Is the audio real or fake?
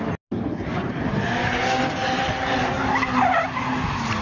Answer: real